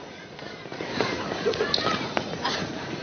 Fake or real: fake